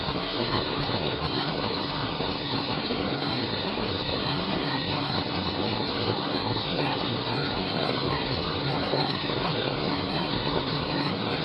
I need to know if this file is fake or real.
fake